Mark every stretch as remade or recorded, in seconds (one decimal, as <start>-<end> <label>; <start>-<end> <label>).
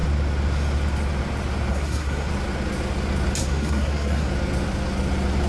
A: 0.0-1.7 recorded; 1.7-2.3 remade; 2.3-3.4 recorded; 3.4-4.3 remade; 4.3-5.5 recorded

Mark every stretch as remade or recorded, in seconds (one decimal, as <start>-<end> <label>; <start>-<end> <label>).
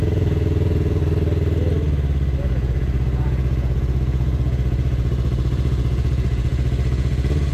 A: 0.0-1.0 remade; 1.0-2.4 recorded; 2.4-7.5 remade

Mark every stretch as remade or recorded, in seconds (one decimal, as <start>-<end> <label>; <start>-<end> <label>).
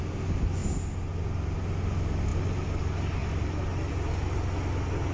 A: 0.0-5.1 recorded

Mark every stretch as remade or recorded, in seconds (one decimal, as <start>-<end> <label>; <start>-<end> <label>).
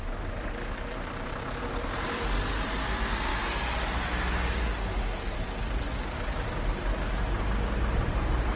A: 0.0-8.6 recorded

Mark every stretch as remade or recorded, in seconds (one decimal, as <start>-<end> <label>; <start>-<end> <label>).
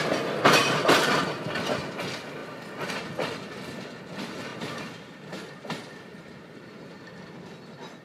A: 0.0-0.6 recorded; 0.6-1.2 remade; 1.2-8.0 recorded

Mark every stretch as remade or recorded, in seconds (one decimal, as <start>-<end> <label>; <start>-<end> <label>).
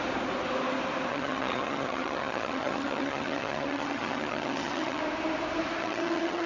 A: 0.0-1.1 recorded; 1.1-5.0 remade; 5.0-5.8 recorded; 5.8-6.5 remade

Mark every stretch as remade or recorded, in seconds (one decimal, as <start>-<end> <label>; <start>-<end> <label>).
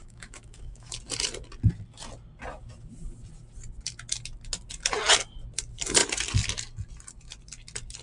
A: 0.0-1.0 remade; 1.0-8.0 recorded